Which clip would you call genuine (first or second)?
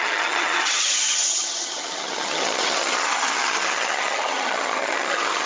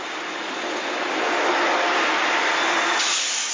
second